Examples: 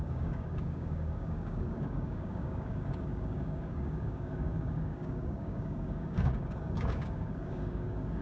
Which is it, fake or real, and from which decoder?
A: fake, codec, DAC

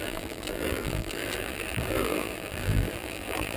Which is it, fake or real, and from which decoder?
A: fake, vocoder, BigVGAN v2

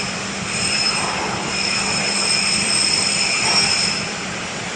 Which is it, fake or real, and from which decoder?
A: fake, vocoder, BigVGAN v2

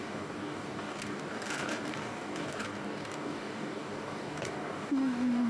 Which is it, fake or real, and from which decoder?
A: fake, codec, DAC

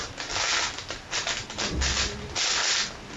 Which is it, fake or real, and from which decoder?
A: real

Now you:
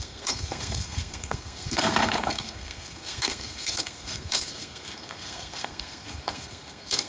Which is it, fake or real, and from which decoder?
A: fake, codec, SNAC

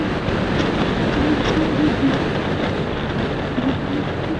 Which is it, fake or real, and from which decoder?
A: real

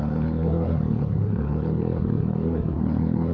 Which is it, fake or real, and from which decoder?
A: fake, codec, SNAC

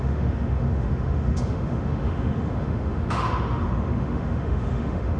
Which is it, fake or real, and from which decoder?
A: fake, autoencoder, DAC-VAE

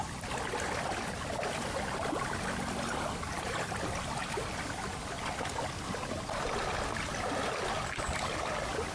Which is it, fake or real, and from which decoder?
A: real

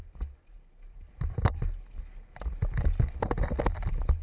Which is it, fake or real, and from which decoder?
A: real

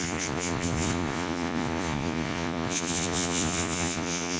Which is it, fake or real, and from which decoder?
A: fake, vocoder, Vocos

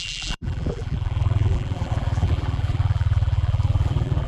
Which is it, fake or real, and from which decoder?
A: fake, vocoder, BigVGAN v2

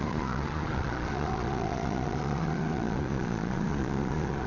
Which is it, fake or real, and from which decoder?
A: fake, vocoder, Vocos